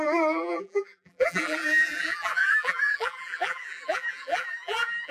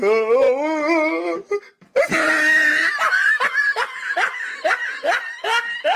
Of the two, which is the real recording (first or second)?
second